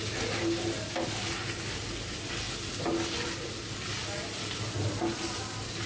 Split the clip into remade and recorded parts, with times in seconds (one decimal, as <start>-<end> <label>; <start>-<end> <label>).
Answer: 0.0-5.9 recorded